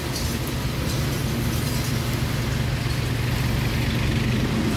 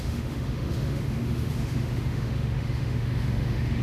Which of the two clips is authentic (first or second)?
first